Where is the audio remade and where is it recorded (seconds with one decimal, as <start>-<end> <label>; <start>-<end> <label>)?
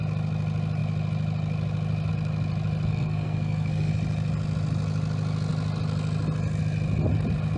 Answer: 0.0-2.9 recorded; 2.9-3.9 remade; 3.9-7.6 recorded